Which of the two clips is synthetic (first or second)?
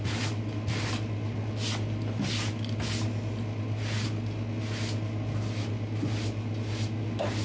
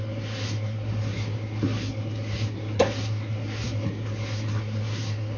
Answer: second